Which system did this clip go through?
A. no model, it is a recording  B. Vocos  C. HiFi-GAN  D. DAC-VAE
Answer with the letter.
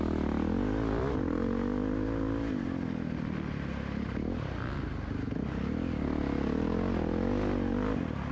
A